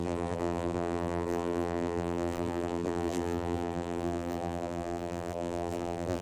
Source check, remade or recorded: remade